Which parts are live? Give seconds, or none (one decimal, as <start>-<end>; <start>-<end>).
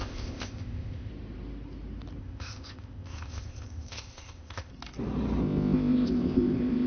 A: 1.1-2.2; 4.7-5.4